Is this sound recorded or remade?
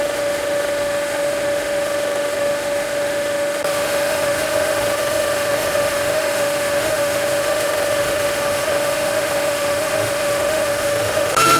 remade